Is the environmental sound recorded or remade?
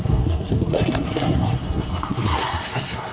remade